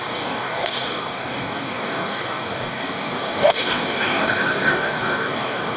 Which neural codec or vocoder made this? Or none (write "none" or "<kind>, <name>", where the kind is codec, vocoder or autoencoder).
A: codec, DAC